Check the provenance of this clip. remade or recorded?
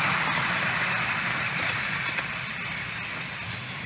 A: remade